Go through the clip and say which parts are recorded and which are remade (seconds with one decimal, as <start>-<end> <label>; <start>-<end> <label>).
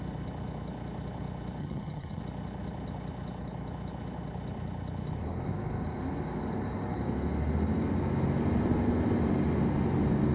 0.0-1.6 recorded; 1.6-2.2 remade; 2.2-10.3 recorded